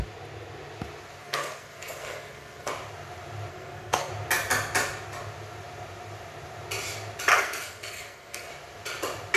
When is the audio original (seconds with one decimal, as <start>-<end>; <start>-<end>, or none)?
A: 0.0-1.2; 2.7-3.5; 4.1-7.3; 8.5-9.4